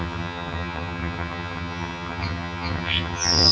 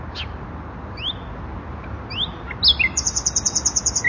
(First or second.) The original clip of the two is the second